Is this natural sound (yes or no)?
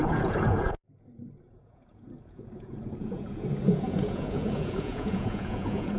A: no